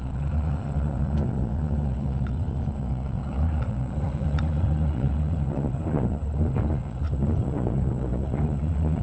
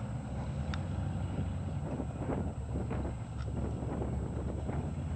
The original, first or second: second